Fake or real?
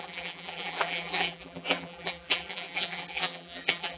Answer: fake